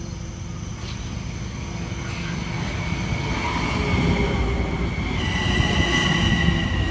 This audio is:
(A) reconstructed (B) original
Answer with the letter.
B